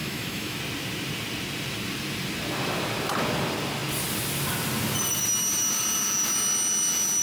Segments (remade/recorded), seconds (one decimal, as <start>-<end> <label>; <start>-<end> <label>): 0.0-0.6 remade; 0.6-7.2 recorded